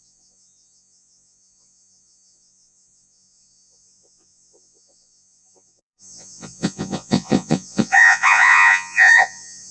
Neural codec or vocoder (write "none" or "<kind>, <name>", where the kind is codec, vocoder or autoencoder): vocoder, Vocos